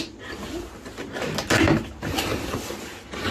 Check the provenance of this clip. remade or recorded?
recorded